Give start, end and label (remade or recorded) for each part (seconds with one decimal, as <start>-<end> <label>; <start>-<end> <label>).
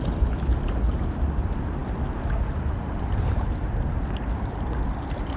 0.0-5.4 recorded